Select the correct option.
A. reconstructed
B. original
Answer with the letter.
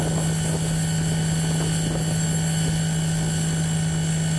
B